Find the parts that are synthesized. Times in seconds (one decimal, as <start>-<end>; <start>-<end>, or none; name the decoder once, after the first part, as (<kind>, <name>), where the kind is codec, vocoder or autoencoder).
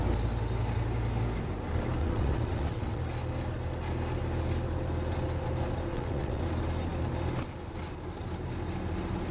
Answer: 2.0-3.0 (vocoder, WaveNeXt); 5.9-6.4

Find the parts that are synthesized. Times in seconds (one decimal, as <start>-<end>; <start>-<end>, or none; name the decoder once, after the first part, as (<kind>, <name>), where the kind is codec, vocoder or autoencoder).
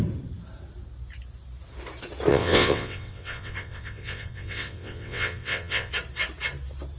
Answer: 2.3-5.9 (vocoder, WaveNeXt)